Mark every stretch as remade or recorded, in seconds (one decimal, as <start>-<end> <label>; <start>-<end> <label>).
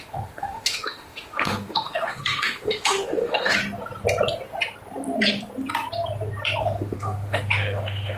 0.0-3.6 remade; 3.6-6.6 recorded; 6.6-8.2 remade